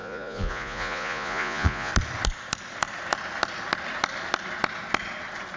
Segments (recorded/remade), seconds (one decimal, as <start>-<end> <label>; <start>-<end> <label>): 0.0-1.9 remade; 1.9-5.6 recorded